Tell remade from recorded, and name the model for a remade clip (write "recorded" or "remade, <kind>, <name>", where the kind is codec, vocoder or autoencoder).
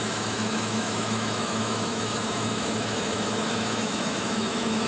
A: remade, autoencoder, DAC-VAE